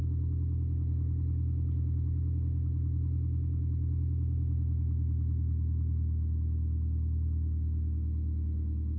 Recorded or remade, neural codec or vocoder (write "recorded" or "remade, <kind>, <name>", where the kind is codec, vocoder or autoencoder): recorded